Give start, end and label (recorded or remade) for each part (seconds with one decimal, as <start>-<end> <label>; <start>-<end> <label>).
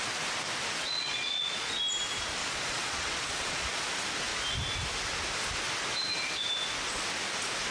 0.0-0.8 recorded; 0.8-1.8 remade; 1.8-2.4 recorded; 2.4-3.9 remade; 3.9-7.7 recorded